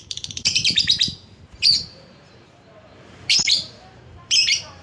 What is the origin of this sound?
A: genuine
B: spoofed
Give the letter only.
B